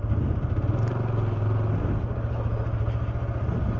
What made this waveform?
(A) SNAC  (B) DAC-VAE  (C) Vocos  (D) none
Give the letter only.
D